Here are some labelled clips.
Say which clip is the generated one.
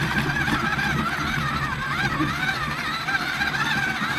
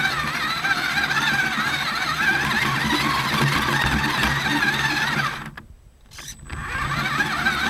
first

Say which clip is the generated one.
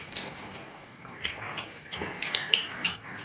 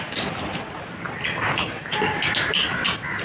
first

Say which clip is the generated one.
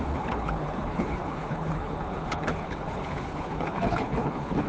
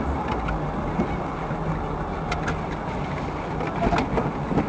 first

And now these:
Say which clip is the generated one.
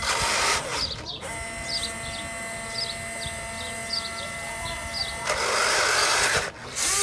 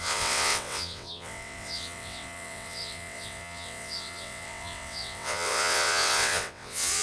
second